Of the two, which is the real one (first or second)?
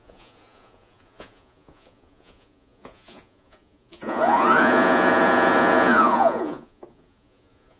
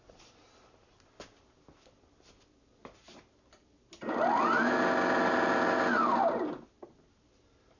second